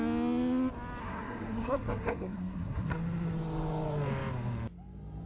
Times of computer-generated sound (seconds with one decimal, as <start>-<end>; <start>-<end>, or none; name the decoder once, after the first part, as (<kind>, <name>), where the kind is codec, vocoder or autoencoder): 1.0-2.9 (codec, SNAC)